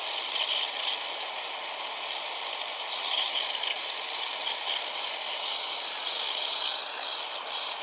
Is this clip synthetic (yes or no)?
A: no